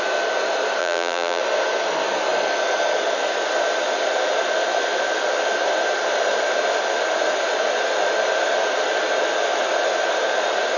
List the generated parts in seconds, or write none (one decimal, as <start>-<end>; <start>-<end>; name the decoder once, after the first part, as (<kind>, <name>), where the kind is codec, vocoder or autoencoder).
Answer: 0.8-1.4 (vocoder, BigVGAN v2)